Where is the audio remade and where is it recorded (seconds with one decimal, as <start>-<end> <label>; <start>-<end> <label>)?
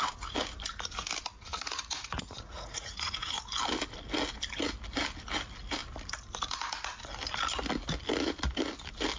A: 0.0-1.5 recorded; 1.5-3.4 remade; 3.4-9.2 recorded